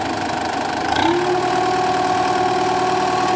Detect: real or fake real